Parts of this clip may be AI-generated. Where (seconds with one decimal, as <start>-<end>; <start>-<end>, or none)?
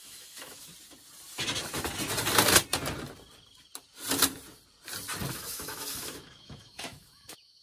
0.0-0.7; 5.3-7.6